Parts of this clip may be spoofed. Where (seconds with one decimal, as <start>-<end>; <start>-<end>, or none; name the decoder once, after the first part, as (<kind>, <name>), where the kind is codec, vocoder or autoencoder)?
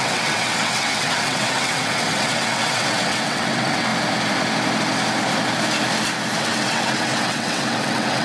0.0-3.9 (vocoder, WaveNeXt); 6.4-8.2